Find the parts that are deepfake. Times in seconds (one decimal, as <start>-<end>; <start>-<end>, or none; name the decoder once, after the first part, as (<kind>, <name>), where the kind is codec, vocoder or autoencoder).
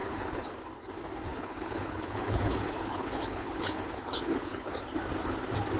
0.0-0.6 (codec, HILCodec); 1.3-4.8